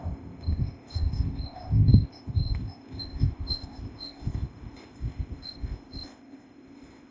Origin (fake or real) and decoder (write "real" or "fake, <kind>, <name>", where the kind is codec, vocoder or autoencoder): fake, codec, ZipCodec